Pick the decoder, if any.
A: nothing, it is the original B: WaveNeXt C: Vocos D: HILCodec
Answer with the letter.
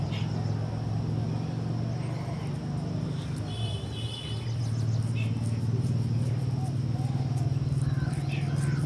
A